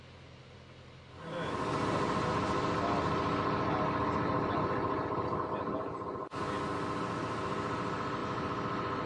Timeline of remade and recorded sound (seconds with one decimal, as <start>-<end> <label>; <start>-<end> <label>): 0.0-9.1 recorded